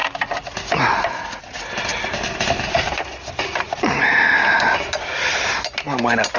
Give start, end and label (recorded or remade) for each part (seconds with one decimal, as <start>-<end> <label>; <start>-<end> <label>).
0.0-1.9 recorded; 1.9-5.5 remade; 5.5-6.4 recorded